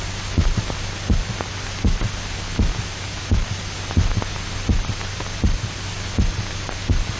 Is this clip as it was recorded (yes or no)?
yes